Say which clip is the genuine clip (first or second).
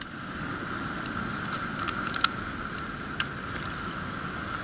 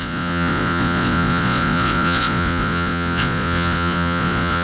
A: first